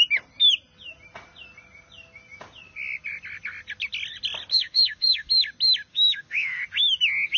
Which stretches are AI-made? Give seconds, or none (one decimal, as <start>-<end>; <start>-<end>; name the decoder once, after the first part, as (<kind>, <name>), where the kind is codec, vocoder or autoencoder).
4.5-5.3 (autoencoder, DAC-VAE); 5.9-6.6